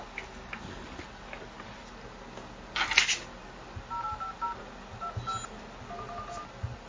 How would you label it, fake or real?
real